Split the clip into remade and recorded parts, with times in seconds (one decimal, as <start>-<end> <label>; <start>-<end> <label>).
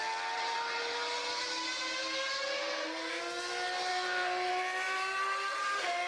0.0-2.6 recorded; 2.6-3.2 remade; 3.2-3.9 recorded; 3.9-4.5 remade; 4.5-5.0 recorded; 5.0-6.1 remade